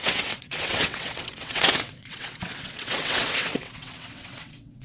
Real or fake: fake